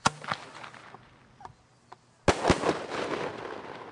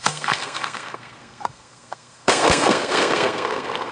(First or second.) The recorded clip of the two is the first